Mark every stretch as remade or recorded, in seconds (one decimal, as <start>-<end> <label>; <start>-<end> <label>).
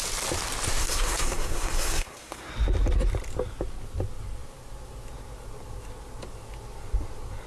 0.0-0.8 recorded; 0.8-2.5 remade; 2.5-7.5 recorded